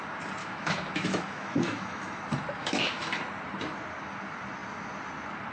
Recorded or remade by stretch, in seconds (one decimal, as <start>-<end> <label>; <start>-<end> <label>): 0.0-0.4 recorded; 0.4-2.2 remade; 2.2-2.6 recorded; 2.6-3.2 remade; 3.2-5.5 recorded